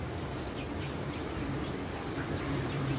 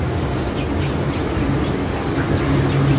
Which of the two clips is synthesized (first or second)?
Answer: first